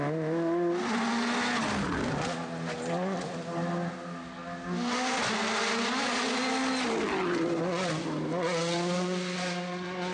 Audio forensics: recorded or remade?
recorded